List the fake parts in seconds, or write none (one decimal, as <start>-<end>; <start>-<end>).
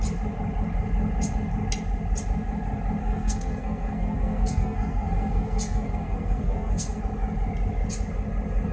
3.0-7.0